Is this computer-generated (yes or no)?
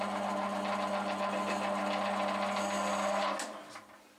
no